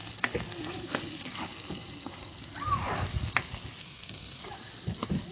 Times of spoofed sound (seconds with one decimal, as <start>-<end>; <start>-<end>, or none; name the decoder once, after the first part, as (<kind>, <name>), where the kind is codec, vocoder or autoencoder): 3.8-4.4 (codec, SNAC)